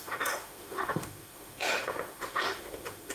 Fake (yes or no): yes